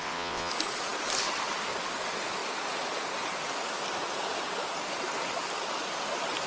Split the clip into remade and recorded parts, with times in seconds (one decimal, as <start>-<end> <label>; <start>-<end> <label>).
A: 0.0-0.5 remade; 0.5-6.5 recorded